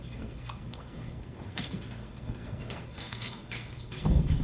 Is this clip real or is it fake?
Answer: fake